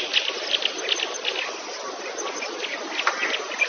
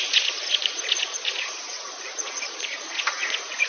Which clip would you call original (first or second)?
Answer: first